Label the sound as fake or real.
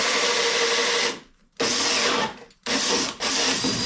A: real